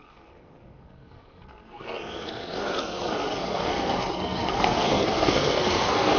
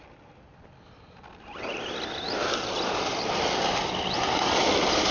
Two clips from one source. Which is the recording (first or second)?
second